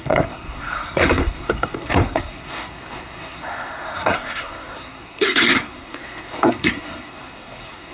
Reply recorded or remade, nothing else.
remade